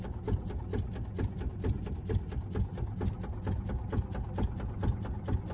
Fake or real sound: real